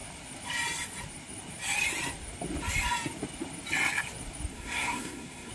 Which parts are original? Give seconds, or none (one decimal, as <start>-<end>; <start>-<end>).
0.0-4.5